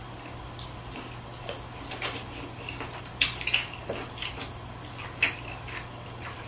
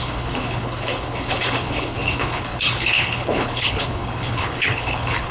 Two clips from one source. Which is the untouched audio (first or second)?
first